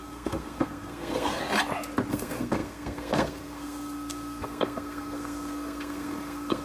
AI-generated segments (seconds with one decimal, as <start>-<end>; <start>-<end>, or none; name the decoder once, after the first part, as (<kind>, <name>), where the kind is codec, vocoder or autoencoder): 0.0-1.4 (codec, SNAC); 2.1-6.6